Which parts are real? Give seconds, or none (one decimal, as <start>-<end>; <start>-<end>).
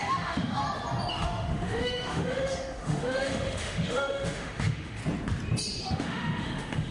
0.6-1.1; 5.0-5.8